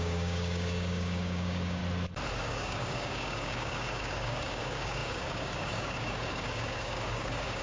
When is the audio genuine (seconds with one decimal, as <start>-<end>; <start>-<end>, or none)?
1.8-2.4